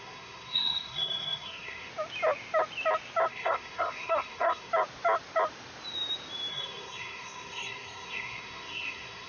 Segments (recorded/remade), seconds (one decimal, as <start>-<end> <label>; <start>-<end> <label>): 0.0-1.9 remade; 1.9-3.3 recorded; 3.3-4.7 remade; 4.7-6.5 recorded; 6.5-9.3 remade